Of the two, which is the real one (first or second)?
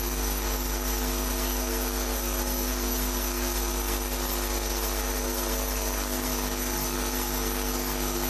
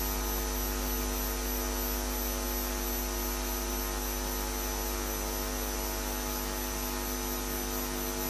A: second